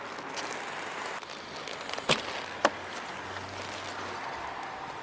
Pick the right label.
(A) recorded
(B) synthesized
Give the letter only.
A